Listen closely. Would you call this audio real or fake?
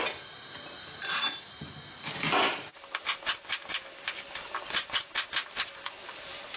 real